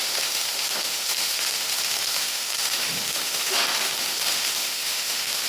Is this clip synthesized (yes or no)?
yes